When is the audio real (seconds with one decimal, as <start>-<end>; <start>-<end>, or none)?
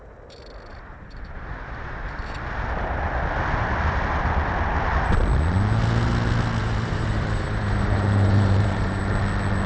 0.0-0.7; 2.2-6.6; 9.0-9.7